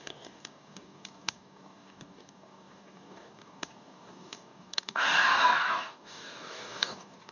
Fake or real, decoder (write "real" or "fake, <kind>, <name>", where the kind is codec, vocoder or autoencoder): fake, codec, DAC